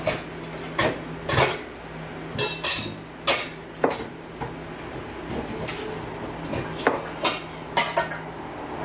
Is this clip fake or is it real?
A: real